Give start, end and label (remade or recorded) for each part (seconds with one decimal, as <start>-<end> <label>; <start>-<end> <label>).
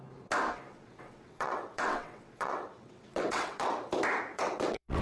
0.0-0.7 recorded; 0.7-3.7 remade; 3.7-4.3 recorded; 4.3-5.0 remade